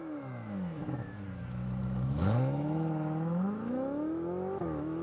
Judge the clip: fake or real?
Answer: fake